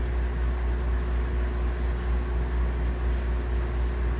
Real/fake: real